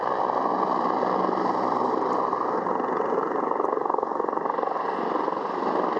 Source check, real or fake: real